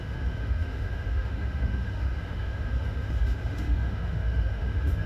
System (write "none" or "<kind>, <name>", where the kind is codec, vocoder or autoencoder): autoencoder, DAC-VAE